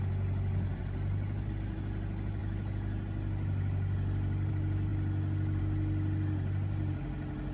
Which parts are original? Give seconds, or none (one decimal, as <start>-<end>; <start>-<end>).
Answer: 0.0-7.5